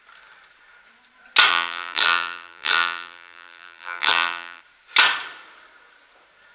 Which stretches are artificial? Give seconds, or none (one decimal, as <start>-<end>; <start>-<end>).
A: 1.5-4.6